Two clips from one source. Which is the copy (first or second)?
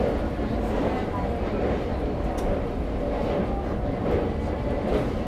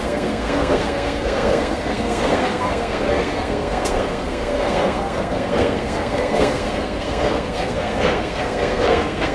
second